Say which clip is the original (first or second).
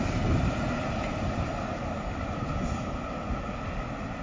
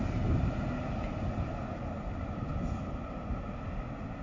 second